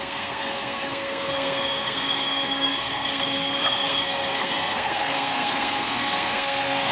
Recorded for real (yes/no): no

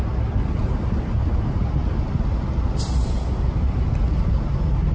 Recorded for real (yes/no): yes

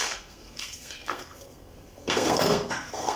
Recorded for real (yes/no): no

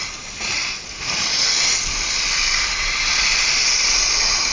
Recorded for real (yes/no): yes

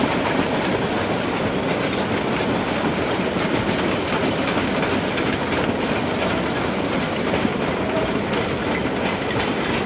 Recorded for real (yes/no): yes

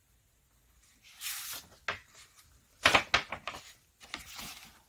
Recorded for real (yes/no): yes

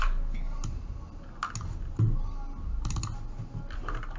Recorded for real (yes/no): yes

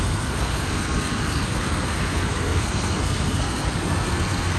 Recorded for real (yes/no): no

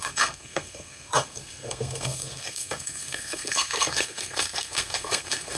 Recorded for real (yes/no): no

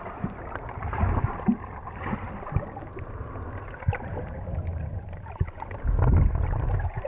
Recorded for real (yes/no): yes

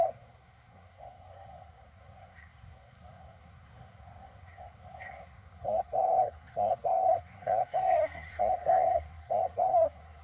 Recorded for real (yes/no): no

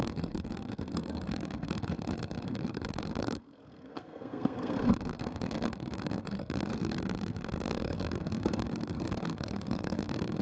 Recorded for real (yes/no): no